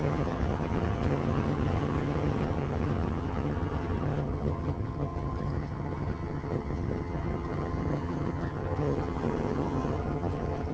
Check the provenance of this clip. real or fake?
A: fake